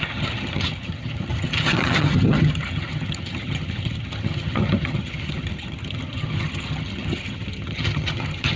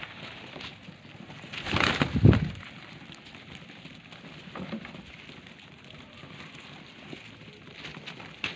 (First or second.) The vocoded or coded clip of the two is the first